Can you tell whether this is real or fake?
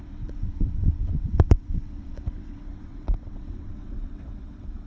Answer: fake